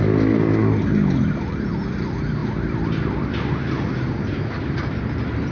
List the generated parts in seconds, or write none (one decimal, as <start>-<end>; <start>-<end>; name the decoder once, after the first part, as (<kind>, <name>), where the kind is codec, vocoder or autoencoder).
none

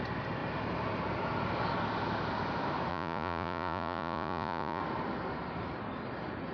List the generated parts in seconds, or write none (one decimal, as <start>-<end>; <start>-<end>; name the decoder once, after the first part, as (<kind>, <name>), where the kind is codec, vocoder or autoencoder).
2.9-4.8 (vocoder, Vocos)

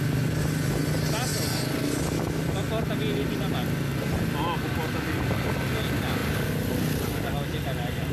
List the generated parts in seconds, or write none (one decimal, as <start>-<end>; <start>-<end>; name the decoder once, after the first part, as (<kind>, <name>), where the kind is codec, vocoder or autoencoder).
none

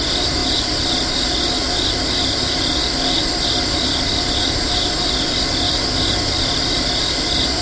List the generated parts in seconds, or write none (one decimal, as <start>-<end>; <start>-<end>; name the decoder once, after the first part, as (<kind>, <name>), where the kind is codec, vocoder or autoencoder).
none

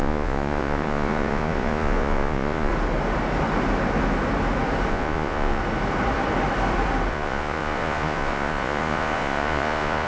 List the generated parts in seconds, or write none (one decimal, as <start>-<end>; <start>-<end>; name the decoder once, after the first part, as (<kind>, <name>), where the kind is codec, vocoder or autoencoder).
0.0-2.7 (vocoder, Vocos); 4.9-5.6; 7.1-10.1